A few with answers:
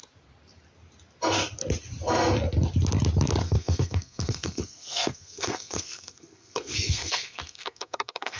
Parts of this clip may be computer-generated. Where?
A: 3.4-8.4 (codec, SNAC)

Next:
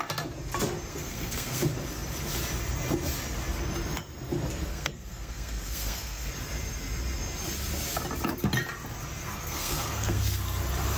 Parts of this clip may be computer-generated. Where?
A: 0.9-1.6 (codec, SNAC); 4.7-6.3; 9.2-10.4

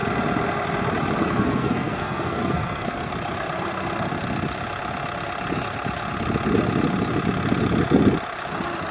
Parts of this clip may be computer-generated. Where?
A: 1.2-3.1 (codec, SNAC)

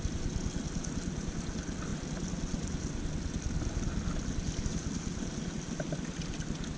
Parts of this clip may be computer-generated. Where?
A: none

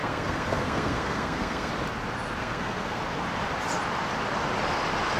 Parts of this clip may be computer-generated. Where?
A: 0.0-1.7 (codec, SNAC); 2.4-3.0

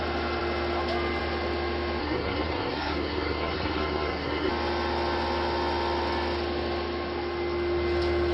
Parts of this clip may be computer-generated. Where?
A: 2.0-4.5 (codec, SNAC)